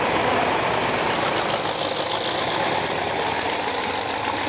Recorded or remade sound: recorded